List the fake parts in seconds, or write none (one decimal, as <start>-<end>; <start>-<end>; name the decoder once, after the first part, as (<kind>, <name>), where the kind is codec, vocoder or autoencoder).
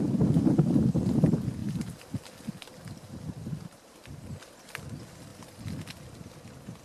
1.6-2.1 (vocoder, BigVGAN v2); 3.4-4.3